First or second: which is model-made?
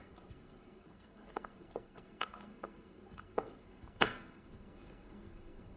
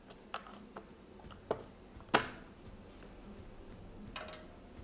first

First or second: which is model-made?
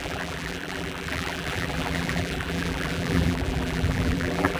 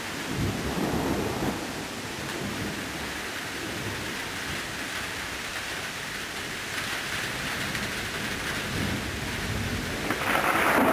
first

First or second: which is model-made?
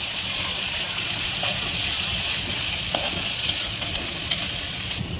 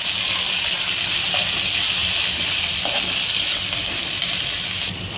first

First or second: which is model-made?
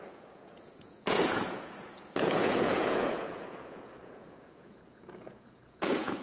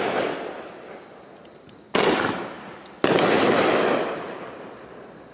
first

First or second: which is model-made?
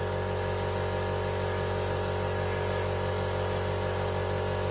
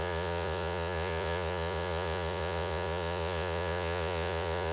second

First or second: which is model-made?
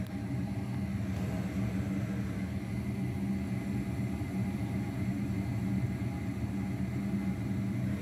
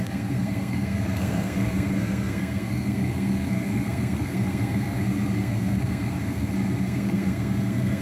second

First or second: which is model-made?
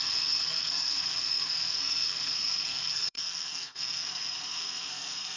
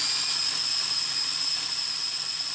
first